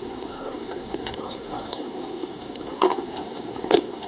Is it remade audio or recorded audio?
remade